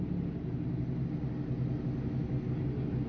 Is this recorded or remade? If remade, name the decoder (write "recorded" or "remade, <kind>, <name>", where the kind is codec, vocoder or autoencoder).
recorded